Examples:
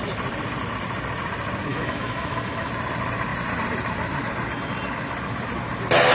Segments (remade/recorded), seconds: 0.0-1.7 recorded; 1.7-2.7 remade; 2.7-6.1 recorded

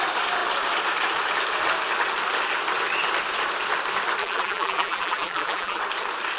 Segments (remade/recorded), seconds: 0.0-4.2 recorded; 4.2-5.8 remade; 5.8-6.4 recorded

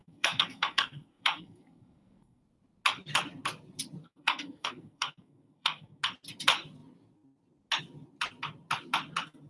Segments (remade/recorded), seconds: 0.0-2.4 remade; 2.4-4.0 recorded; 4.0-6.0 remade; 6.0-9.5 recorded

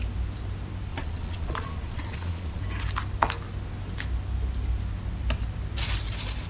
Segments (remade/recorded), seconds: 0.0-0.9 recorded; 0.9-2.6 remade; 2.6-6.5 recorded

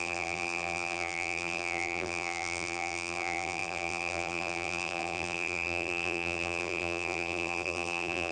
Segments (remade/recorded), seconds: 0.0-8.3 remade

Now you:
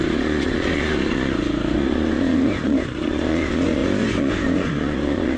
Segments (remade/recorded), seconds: 0.0-5.4 remade

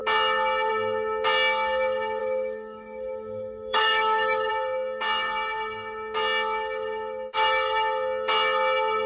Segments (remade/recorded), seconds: 0.0-2.2 recorded; 2.2-4.5 remade; 4.5-9.1 recorded

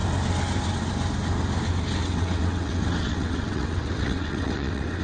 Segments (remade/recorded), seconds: 0.0-2.0 recorded; 2.0-5.0 remade